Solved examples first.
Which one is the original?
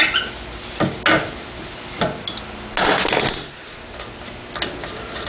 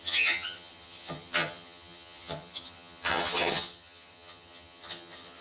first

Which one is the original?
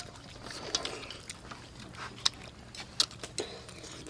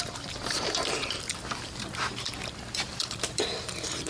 first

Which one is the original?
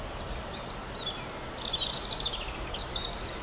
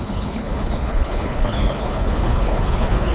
first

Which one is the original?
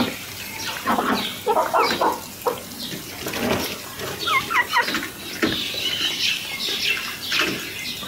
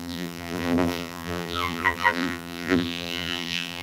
first